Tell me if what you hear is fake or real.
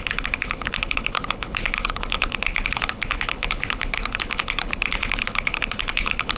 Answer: fake